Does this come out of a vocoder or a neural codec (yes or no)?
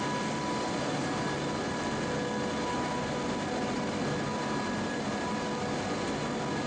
no